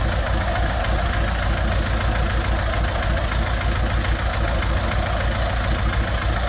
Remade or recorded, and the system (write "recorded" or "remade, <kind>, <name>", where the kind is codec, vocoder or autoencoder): recorded